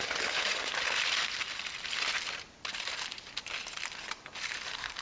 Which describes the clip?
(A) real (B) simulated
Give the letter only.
A